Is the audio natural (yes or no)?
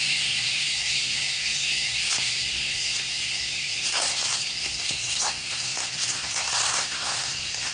no